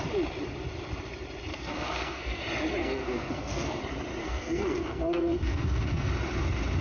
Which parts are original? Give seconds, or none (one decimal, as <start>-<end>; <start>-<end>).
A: 0.0-1.5; 2.4-2.8; 3.8-4.2; 6.1-6.8